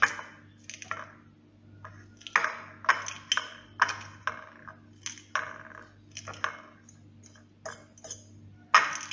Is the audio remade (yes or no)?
no